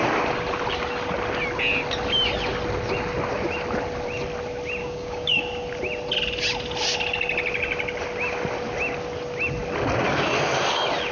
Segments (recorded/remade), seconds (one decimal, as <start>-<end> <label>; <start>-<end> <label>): 0.0-4.8 recorded; 4.8-5.4 remade; 5.4-11.1 recorded